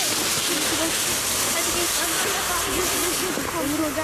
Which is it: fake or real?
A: real